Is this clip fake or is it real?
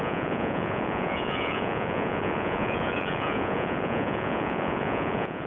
fake